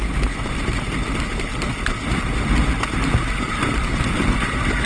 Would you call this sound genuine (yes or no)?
yes